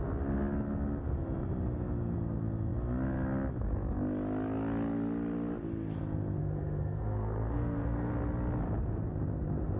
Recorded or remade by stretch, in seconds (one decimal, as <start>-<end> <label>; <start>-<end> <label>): 0.0-6.4 recorded; 6.4-8.1 remade; 8.1-9.8 recorded